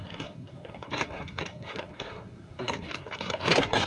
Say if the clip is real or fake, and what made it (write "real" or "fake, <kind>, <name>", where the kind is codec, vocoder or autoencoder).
fake, codec, SNAC